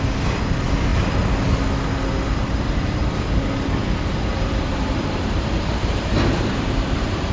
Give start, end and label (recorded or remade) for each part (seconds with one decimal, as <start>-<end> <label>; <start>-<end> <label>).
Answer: 0.0-4.3 recorded; 4.3-7.3 remade